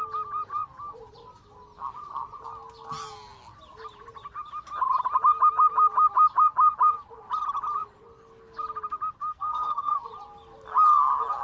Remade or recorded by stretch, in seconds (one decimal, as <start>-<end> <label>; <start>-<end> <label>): 0.0-9.2 recorded; 9.2-10.1 remade; 10.1-11.4 recorded

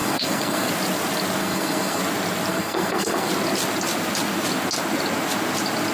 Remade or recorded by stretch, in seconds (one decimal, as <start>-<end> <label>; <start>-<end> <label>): 0.0-0.7 remade; 0.7-1.4 recorded; 1.4-2.0 remade; 2.0-2.5 recorded; 2.5-3.3 remade; 3.3-5.9 recorded